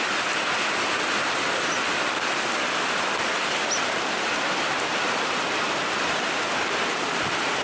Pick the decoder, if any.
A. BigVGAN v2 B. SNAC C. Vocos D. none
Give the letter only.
A